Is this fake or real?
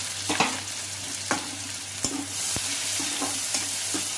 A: real